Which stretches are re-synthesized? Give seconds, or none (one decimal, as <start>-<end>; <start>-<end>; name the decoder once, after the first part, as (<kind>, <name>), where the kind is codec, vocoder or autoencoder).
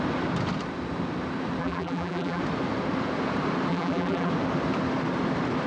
1.6-2.4 (vocoder, BigVGAN v2); 3.7-4.3